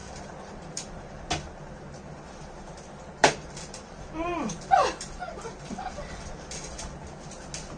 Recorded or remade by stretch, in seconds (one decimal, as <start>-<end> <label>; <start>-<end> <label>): 0.0-1.3 remade; 1.3-3.2 recorded; 3.2-7.0 remade; 7.0-7.8 recorded